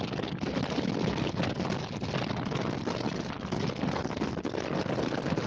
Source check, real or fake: real